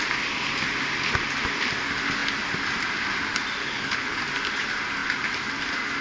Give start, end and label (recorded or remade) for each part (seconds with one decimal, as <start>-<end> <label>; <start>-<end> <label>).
0.0-3.6 recorded; 3.6-4.2 remade; 4.2-6.0 recorded